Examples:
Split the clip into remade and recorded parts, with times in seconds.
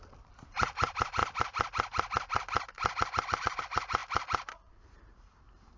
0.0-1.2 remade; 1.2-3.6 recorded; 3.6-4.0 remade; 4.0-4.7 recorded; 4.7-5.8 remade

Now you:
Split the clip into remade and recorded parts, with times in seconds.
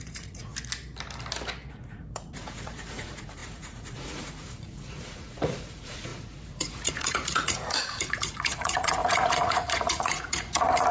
0.0-0.5 remade; 0.5-1.7 recorded; 1.7-10.9 remade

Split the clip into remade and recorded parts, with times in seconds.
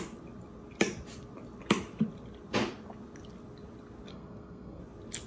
0.0-4.1 recorded; 4.1-4.8 remade; 4.8-5.3 recorded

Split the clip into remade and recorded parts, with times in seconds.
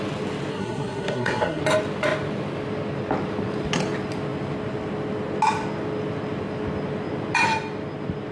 0.0-0.5 recorded; 0.5-1.6 remade; 1.6-8.3 recorded